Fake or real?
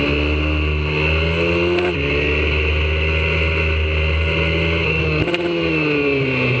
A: real